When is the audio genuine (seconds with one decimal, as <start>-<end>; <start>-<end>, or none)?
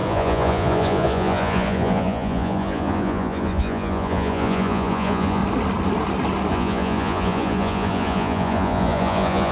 5.4-6.5